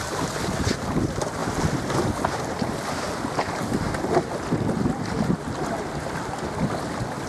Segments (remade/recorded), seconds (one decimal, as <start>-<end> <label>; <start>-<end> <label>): 0.0-1.4 recorded; 1.4-3.3 remade; 3.3-7.3 recorded